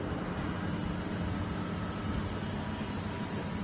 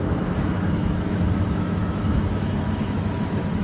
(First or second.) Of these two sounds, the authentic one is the first